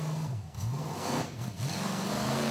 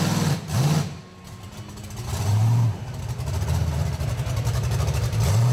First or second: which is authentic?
second